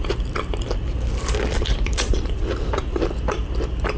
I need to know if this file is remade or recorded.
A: remade